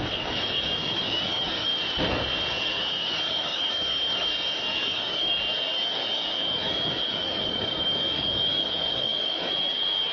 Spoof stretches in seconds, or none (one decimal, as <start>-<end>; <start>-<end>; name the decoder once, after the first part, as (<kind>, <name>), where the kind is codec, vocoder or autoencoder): 0.0-1.7 (codec, DAC); 2.6-10.1